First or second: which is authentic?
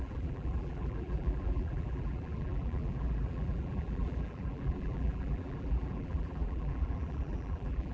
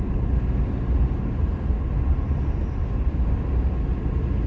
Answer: second